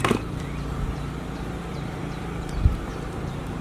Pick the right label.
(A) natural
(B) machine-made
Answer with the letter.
B